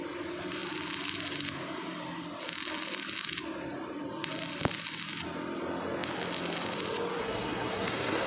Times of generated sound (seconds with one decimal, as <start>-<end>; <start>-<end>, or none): 7.2-8.3